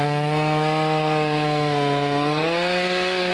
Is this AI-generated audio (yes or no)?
yes